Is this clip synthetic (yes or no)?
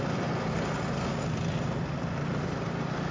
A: no